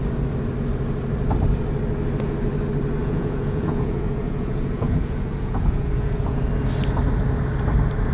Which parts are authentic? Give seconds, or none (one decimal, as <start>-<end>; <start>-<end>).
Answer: 0.0-3.0; 6.4-8.1